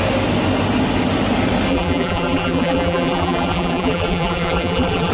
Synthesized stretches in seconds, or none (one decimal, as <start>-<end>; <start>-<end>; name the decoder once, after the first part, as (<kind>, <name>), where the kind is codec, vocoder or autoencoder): 1.7-5.1 (vocoder, BigVGAN v2)